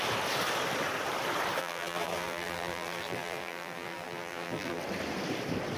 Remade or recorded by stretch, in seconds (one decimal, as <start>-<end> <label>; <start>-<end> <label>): 0.0-1.6 recorded; 1.6-4.8 remade; 4.8-5.8 recorded